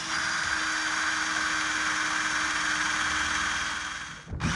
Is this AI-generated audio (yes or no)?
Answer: no